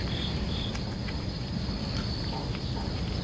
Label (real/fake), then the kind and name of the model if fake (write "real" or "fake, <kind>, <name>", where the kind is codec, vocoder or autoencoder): real